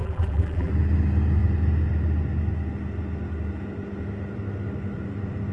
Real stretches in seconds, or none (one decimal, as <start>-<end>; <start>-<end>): 0.7-5.5